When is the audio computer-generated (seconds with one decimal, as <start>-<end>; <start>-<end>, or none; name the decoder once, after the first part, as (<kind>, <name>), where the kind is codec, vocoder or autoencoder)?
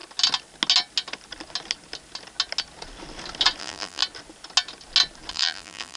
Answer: 3.6-4.0 (vocoder, BigVGAN v2); 5.3-6.0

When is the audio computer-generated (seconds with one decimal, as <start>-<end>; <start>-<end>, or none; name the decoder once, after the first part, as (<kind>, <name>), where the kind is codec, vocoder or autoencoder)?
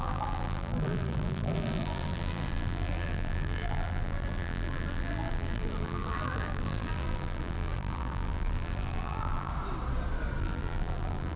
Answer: 0.0-9.5 (vocoder, BigVGAN v2); 10.4-11.4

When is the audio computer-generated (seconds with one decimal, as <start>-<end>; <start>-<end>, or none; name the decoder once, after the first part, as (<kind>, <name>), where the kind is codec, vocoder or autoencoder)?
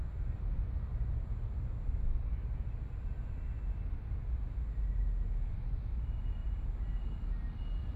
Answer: 6.4-7.0 (vocoder, BigVGAN v2)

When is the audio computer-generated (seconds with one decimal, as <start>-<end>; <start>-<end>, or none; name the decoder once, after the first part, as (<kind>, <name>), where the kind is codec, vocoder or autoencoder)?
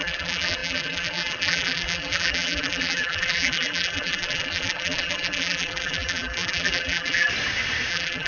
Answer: 0.0-7.3 (vocoder, BigVGAN v2); 7.9-8.3